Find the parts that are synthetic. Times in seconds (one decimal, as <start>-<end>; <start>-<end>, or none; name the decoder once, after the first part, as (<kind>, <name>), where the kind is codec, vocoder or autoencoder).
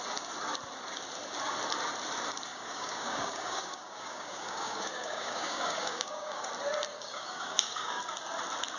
2.5-6.5 (codec, DAC); 6.9-8.0